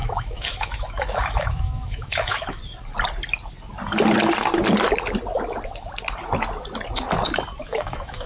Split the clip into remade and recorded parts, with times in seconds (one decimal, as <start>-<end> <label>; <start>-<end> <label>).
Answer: 0.0-2.6 remade; 2.6-7.6 recorded; 7.6-8.3 remade